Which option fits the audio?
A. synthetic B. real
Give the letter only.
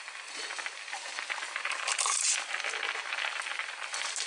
B